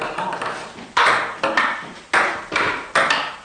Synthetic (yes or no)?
no